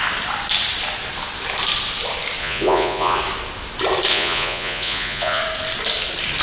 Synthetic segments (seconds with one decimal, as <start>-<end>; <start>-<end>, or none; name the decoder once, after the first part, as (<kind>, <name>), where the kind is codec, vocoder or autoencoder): 2.4-3.2 (vocoder, Vocos); 4.1-5.4